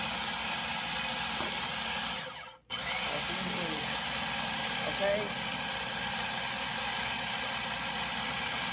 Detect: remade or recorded recorded